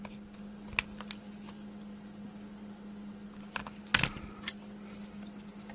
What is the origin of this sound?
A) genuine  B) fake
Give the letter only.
A